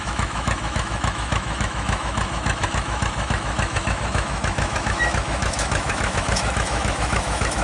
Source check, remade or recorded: remade